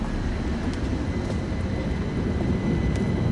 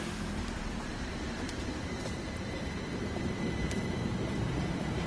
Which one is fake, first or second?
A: second